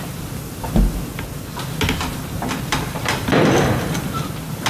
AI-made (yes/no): no